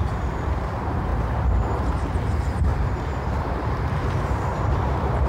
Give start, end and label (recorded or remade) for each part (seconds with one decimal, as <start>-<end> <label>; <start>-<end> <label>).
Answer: 0.0-1.1 remade; 1.1-1.8 recorded; 1.8-5.3 remade